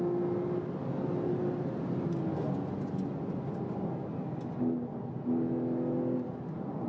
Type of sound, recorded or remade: recorded